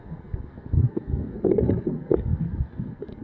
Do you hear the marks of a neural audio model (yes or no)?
yes